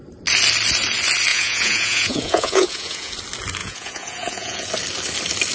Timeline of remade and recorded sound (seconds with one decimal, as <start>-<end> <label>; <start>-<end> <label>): 0.0-1.3 recorded; 1.3-3.1 remade; 3.1-3.6 recorded; 3.6-4.7 remade; 4.7-5.5 recorded